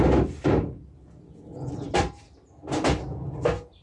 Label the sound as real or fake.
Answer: real